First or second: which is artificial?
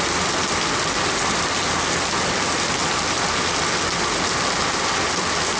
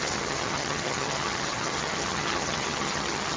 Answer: second